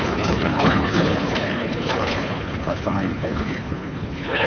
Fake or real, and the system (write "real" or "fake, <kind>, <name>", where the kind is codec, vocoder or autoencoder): fake, codec, HILCodec